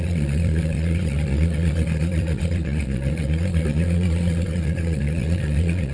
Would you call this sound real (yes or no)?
no